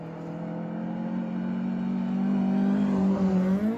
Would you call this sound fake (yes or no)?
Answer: no